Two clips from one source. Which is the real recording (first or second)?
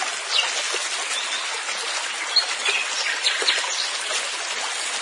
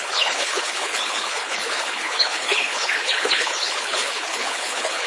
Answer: first